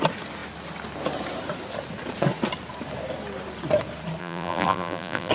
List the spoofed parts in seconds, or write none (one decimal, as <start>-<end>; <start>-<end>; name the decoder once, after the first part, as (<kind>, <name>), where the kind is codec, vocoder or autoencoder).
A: 4.2-5.3 (vocoder, BigVGAN v2)